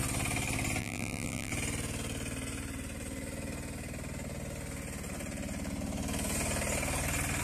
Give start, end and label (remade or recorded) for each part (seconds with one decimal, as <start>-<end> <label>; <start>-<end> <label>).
0.0-0.8 recorded; 0.8-1.5 remade; 1.5-7.4 recorded